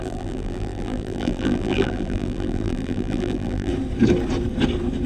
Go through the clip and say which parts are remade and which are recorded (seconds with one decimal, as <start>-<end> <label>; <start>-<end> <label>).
0.0-3.7 remade; 3.7-5.1 recorded